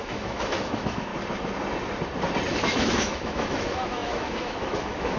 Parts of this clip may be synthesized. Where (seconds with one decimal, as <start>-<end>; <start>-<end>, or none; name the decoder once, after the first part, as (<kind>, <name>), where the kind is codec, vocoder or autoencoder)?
0.0-1.1 (autoencoder, DAC-VAE); 2.5-5.2